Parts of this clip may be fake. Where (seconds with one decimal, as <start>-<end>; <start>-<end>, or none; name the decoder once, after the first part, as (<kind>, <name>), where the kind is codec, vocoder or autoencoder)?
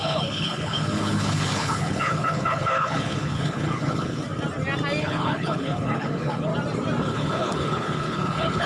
0.0-4.2 (codec, HILCodec); 5.0-6.5; 7.0-8.7